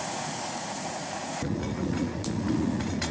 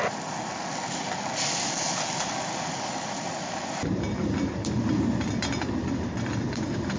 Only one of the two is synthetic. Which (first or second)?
first